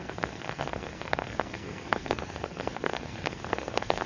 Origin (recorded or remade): remade